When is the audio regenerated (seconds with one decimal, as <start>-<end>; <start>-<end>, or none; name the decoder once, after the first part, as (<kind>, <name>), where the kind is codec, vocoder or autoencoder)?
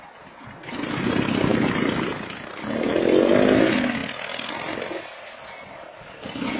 none